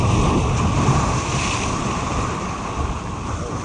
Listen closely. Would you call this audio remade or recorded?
recorded